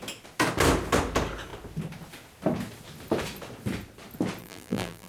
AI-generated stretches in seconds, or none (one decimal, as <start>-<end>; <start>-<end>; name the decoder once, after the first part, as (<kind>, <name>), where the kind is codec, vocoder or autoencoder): 4.4-5.1 (vocoder, BigVGAN v2)